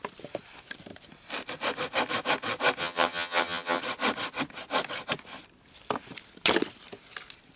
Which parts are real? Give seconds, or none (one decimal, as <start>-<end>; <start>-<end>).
0.0-2.8; 3.8-7.6